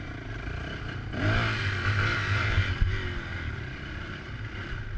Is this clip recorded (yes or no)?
yes